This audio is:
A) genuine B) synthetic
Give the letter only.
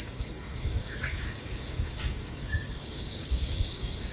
B